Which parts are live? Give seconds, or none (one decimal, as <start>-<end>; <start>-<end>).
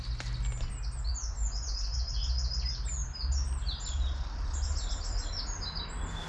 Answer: 0.0-1.1; 2.1-6.3